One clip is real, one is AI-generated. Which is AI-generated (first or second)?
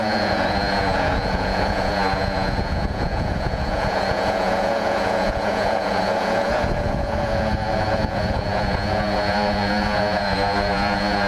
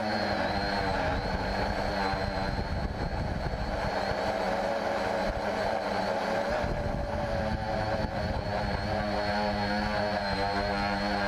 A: first